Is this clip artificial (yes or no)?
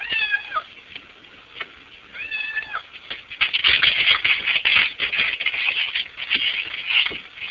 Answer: no